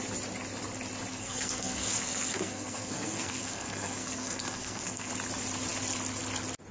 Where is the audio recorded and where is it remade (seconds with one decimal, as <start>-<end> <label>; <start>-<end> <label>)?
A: 0.0-1.1 recorded; 1.1-5.1 remade; 5.1-6.7 recorded